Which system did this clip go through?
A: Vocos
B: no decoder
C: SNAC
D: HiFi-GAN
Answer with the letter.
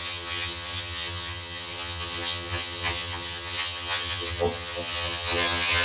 D